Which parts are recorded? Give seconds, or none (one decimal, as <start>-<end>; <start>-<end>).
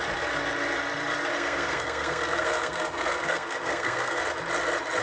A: 0.0-1.3; 4.2-5.0